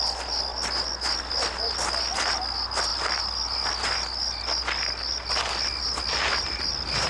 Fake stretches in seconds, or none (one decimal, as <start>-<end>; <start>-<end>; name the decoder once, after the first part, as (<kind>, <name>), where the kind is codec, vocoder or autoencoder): none